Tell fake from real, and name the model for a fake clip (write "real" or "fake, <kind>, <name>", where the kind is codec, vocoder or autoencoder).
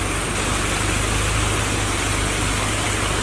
real